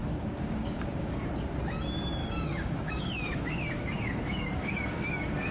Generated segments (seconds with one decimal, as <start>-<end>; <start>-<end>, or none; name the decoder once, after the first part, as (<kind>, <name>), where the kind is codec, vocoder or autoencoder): 0.0-1.3 (codec, DAC); 2.2-5.5